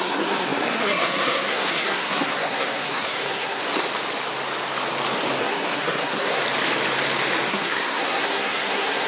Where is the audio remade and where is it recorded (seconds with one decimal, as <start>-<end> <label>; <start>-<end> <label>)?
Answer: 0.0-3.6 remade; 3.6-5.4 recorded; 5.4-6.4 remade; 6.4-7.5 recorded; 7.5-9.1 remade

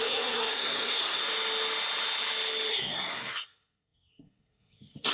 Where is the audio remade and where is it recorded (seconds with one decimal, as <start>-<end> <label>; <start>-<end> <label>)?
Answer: 0.0-1.2 remade; 1.2-2.7 recorded; 2.7-5.1 remade

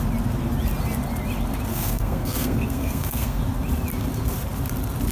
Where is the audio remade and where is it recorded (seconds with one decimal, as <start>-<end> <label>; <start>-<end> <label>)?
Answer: 0.0-1.7 recorded; 1.7-3.4 remade; 3.4-5.1 recorded

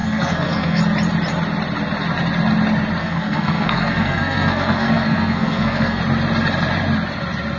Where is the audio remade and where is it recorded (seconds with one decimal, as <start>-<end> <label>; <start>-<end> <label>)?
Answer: 0.0-0.8 remade; 0.8-3.0 recorded; 3.0-6.0 remade; 6.0-7.6 recorded

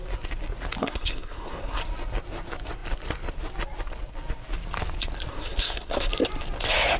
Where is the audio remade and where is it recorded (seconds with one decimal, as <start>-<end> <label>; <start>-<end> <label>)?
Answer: 0.0-0.8 recorded; 0.8-1.8 remade; 1.8-5.3 recorded; 5.3-6.1 remade; 6.1-7.0 recorded